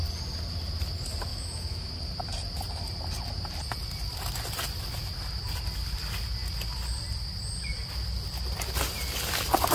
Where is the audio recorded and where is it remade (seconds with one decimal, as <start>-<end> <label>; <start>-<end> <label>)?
0.0-1.3 recorded; 1.3-1.9 remade; 1.9-9.7 recorded

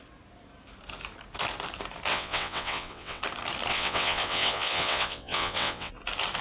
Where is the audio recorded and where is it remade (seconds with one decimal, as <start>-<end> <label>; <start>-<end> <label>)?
0.0-2.1 recorded; 2.1-3.2 remade; 3.2-3.7 recorded; 3.7-5.9 remade; 5.9-6.4 recorded

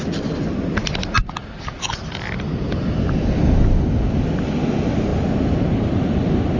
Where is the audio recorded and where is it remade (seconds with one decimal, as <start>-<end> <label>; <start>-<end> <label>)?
0.0-6.6 recorded

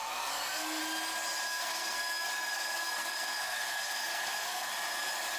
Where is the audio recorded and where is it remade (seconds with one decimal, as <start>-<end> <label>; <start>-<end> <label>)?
0.0-0.8 remade; 0.8-1.5 recorded; 1.5-4.7 remade; 4.7-5.4 recorded